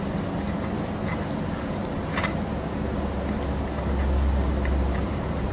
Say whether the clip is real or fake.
real